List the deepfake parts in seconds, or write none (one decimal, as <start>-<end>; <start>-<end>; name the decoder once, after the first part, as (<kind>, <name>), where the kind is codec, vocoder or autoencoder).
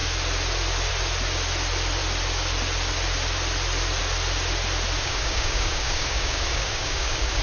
5.0-7.4 (codec, DAC)